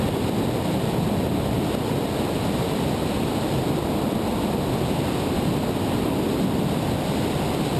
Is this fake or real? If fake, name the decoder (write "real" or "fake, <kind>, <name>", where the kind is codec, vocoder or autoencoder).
real